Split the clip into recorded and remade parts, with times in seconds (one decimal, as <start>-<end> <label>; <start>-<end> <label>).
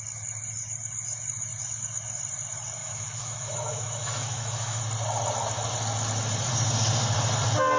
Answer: 0.0-2.8 recorded; 2.8-4.8 remade; 4.8-7.8 recorded